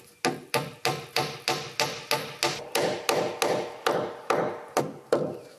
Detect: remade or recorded recorded